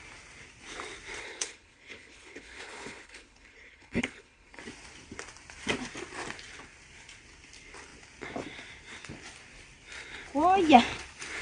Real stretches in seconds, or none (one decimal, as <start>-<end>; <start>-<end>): 0.0-1.2; 4.6-11.4

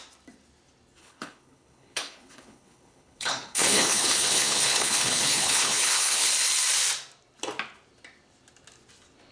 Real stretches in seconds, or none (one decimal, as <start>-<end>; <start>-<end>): 0.0-1.0; 6.3-9.3

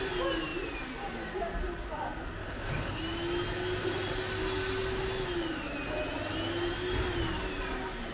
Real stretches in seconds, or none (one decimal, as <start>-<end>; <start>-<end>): 0.0-2.4; 3.0-8.1

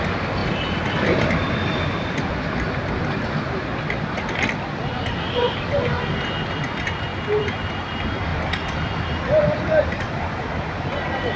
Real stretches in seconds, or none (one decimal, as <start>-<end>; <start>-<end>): 0.0-11.4